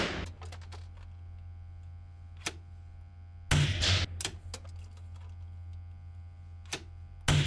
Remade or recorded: recorded